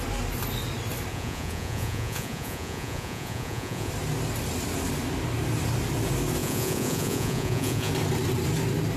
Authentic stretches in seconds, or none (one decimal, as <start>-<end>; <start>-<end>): 0.0-1.1; 3.9-6.4; 7.9-9.0